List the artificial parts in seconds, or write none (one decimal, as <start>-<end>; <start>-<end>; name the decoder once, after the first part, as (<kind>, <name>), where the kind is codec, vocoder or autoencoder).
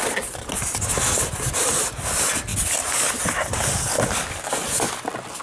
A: none